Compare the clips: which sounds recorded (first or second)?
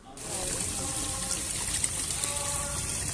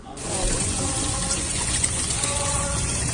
first